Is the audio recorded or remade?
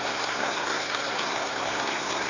remade